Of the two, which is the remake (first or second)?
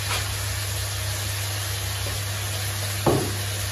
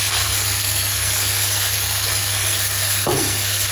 second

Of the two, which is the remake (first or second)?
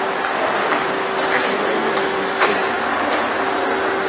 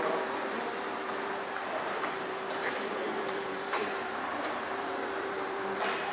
second